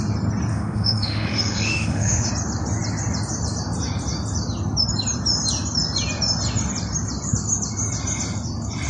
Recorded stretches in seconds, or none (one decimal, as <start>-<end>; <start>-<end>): 0.0-0.5; 2.3-8.9